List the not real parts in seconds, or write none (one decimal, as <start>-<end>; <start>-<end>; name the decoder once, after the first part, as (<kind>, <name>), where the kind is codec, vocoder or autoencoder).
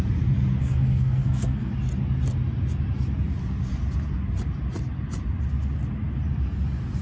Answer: 0.6-1.7 (codec, SNAC)